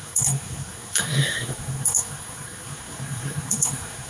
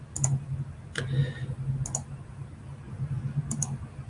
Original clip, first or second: second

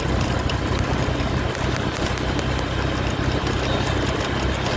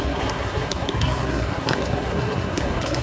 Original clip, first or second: first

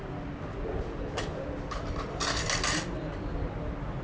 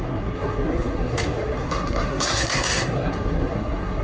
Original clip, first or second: first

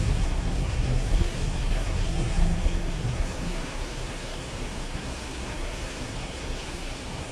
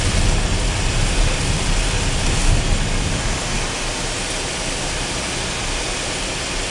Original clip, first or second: second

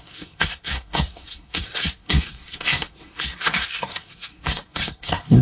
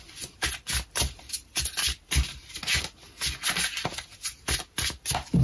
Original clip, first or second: second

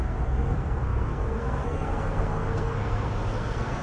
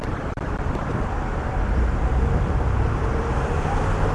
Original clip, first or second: second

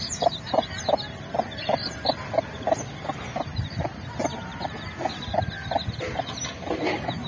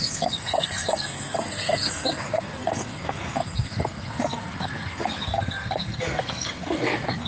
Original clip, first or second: first